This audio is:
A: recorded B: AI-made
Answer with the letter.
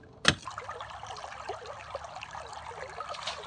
A